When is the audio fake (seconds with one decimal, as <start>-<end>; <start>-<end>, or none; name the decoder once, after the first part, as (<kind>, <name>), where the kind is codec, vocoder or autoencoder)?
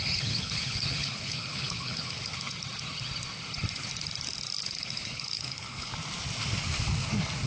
0.0-2.3 (codec, HILCodec); 4.6-5.9